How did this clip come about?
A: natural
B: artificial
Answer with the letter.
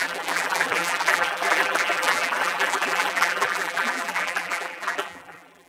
B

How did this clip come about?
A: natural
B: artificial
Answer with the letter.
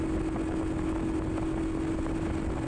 A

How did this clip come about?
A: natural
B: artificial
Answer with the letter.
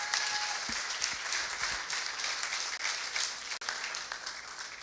A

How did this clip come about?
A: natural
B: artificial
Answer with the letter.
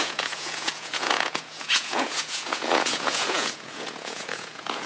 B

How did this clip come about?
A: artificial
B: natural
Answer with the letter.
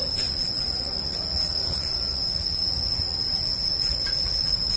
A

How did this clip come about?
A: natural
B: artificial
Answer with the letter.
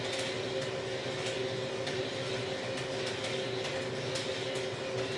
A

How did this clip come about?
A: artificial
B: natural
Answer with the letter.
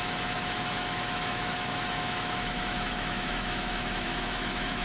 A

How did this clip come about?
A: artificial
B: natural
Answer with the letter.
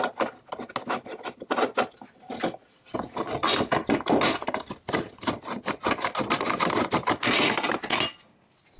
B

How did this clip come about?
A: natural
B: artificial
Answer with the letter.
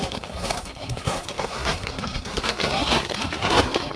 B